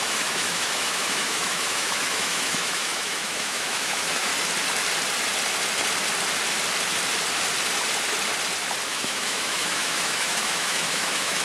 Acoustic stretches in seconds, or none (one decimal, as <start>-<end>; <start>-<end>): 4.3-8.9